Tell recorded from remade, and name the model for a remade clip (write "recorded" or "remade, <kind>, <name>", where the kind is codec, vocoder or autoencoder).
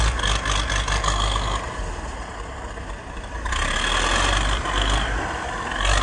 recorded